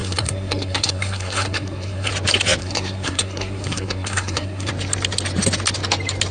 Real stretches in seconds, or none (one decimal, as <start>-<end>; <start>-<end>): 2.1-2.6; 4.7-6.3